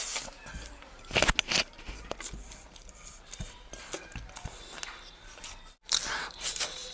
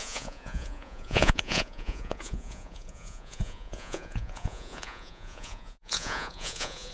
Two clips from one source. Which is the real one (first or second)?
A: first